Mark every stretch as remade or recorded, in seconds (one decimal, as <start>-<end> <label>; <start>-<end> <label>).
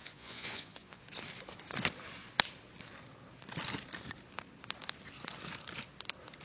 0.0-1.0 remade; 1.0-6.4 recorded